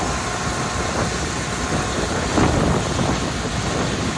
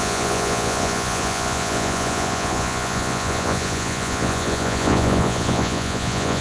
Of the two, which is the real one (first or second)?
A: first